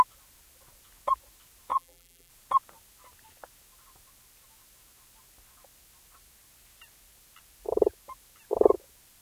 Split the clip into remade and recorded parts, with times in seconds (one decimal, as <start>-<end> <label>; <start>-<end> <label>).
0.0-1.7 recorded; 1.7-2.3 remade; 2.3-9.2 recorded